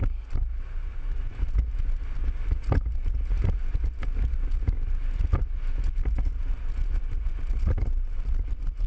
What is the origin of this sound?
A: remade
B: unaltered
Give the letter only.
B